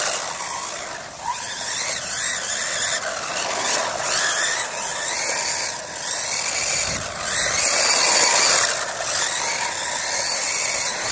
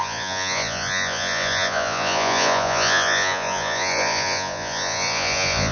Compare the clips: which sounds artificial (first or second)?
second